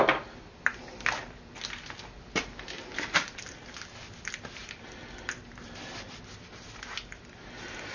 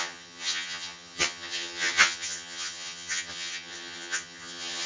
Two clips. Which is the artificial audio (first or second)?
second